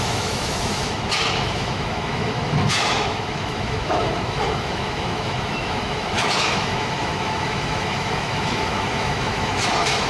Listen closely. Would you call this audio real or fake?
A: fake